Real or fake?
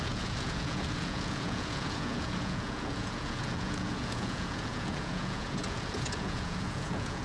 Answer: fake